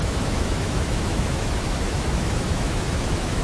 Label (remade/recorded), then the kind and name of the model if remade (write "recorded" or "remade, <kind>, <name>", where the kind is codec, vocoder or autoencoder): remade, autoencoder, DAC-VAE